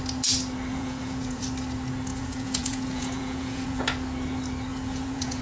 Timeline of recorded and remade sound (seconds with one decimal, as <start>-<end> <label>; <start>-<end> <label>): 0.0-0.7 recorded; 0.7-1.4 remade; 1.4-2.1 recorded; 2.1-3.8 remade; 3.8-4.7 recorded; 4.7-5.4 remade